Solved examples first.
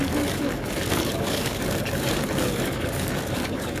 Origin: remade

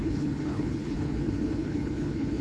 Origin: remade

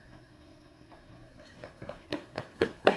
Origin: remade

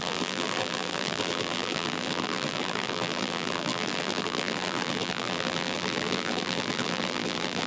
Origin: remade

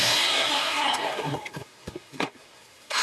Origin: remade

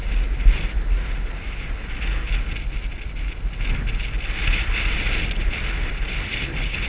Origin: recorded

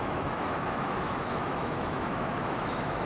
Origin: remade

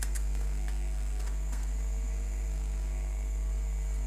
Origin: remade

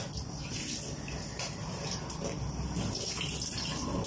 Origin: recorded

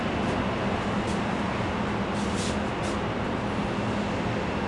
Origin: recorded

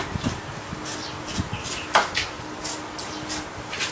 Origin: recorded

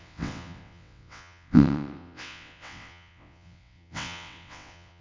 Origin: remade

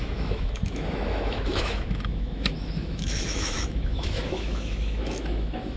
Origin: remade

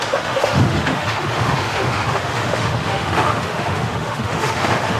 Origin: remade